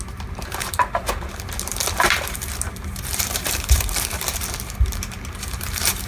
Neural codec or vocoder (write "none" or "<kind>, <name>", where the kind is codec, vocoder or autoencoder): vocoder, BigVGAN v2